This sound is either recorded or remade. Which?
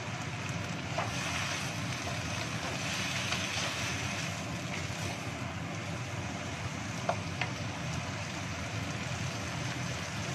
recorded